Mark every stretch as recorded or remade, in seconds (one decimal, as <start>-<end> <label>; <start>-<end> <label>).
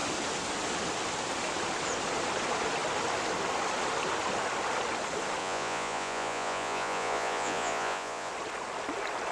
0.0-5.4 recorded; 5.4-8.3 remade; 8.3-9.3 recorded